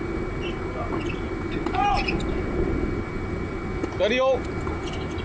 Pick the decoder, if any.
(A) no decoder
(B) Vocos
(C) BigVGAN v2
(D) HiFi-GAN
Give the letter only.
A